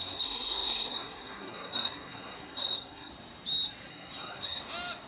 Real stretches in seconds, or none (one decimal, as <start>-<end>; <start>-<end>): 3.1-3.9; 4.6-5.1